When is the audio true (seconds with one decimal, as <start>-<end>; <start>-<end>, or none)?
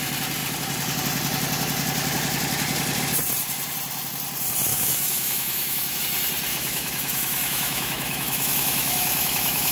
0.0-4.7; 6.0-6.5